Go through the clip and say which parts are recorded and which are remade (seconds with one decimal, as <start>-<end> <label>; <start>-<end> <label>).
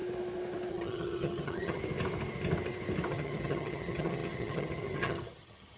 0.0-0.7 recorded; 0.7-1.8 remade; 1.8-3.1 recorded; 3.1-5.8 remade